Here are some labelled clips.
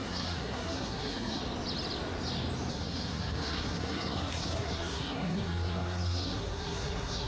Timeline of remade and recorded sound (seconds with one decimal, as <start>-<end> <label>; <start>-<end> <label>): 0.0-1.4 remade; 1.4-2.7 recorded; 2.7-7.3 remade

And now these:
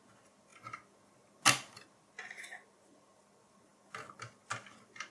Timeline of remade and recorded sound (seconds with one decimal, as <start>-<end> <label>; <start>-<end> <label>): 0.0-5.1 recorded

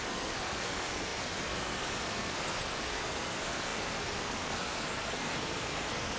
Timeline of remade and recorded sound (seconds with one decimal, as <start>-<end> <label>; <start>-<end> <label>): 0.0-6.2 remade

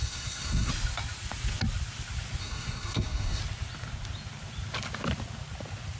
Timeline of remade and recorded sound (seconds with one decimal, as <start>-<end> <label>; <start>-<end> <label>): 0.0-0.7 remade; 0.7-2.4 recorded; 2.4-3.4 remade; 3.4-6.0 recorded

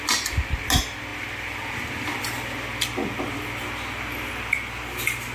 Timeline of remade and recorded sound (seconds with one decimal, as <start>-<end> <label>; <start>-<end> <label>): 0.0-5.3 recorded

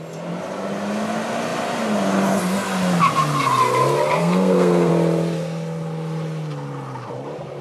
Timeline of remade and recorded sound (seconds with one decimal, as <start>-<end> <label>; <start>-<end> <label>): 0.0-4.2 recorded; 4.2-4.9 remade; 4.9-7.6 recorded

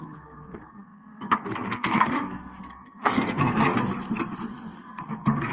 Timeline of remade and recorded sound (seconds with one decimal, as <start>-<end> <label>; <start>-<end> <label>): 0.0-3.7 remade; 3.7-4.5 recorded; 4.5-5.5 remade